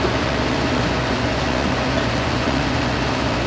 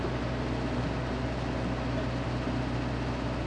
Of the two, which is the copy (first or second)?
first